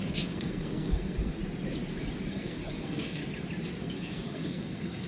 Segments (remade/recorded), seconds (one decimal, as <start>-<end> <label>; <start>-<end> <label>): 0.0-1.4 remade; 1.4-2.3 recorded; 2.3-3.2 remade; 3.2-3.8 recorded; 3.8-5.1 remade